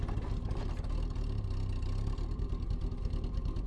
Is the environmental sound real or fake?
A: real